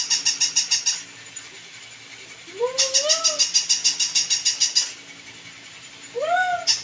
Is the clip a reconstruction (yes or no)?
no